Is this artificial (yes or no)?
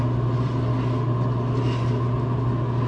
no